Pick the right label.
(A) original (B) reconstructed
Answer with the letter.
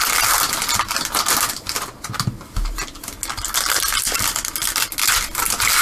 A